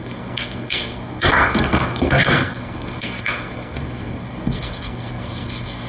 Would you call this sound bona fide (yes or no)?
no